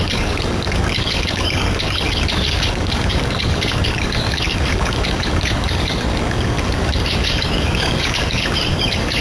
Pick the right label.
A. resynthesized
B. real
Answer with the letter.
A